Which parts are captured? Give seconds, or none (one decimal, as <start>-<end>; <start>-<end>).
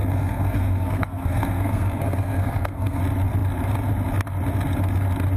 3.0-5.4